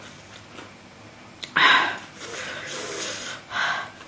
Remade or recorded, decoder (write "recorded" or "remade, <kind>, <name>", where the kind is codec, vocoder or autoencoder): recorded